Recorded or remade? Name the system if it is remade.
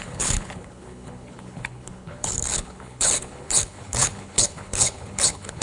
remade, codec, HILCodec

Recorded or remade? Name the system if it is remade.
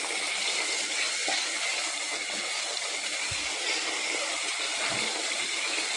recorded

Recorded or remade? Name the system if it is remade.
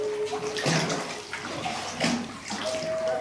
recorded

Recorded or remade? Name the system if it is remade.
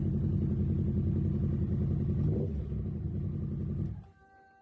recorded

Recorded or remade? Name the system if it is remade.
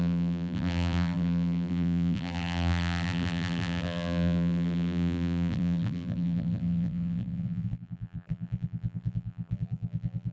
remade, vocoder, BigVGAN v2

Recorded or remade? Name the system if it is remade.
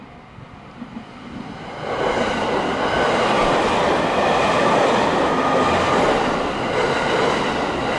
recorded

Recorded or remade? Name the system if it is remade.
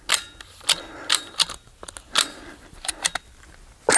recorded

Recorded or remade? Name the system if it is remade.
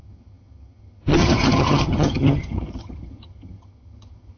remade, vocoder, HiFi-GAN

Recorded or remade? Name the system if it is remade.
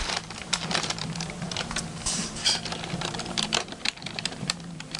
remade, vocoder, BigVGAN v2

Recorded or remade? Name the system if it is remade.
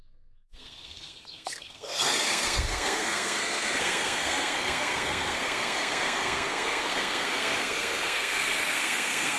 remade, codec, SNAC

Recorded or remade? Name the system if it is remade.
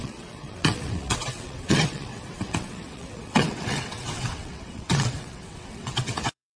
remade, vocoder, WaveNeXt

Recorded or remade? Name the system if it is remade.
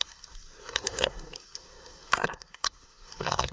remade, codec, SNAC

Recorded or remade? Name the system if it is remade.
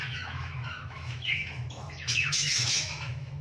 remade, autoencoder, DAC-VAE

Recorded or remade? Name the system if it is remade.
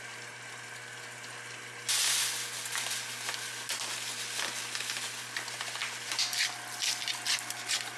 recorded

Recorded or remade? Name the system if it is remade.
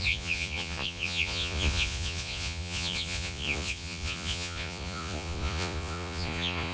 remade, vocoder, Vocos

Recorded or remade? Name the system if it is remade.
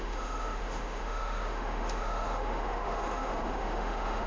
remade, autoencoder, DAC-VAE